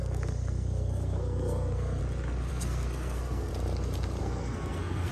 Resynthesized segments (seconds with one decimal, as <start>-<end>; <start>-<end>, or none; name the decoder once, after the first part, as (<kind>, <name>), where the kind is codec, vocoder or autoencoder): 0.0-2.0 (codec, SNAC); 2.5-3.5; 4.2-5.1